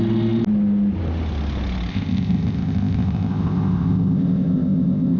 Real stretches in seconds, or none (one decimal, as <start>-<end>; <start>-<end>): 0.0-1.9